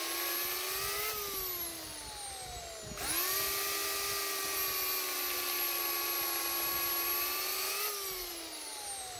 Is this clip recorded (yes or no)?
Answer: yes